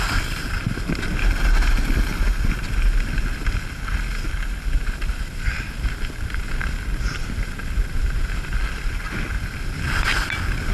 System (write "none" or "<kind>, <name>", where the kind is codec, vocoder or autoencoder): none